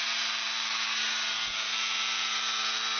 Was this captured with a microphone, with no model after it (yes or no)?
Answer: yes